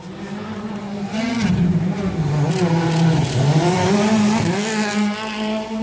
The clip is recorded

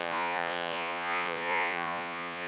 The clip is remade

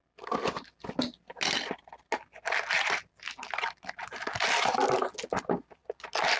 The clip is recorded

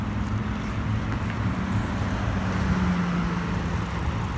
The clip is recorded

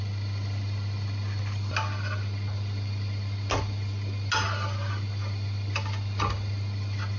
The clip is recorded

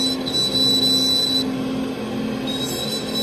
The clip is recorded